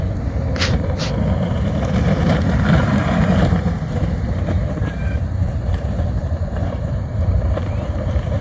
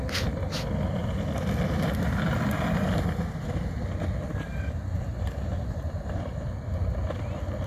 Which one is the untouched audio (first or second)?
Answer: second